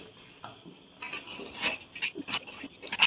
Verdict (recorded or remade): recorded